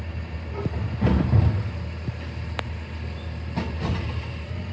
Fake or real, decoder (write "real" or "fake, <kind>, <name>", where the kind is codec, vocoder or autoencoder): real